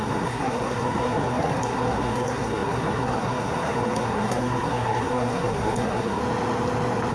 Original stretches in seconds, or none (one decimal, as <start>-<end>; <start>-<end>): 6.2-7.1